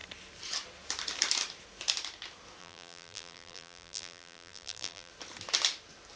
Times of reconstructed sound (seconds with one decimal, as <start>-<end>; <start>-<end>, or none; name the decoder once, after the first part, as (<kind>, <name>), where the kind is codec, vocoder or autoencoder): 2.6-5.1 (vocoder, BigVGAN v2)